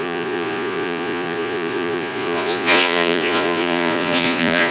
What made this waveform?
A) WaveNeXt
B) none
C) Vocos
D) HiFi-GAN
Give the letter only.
C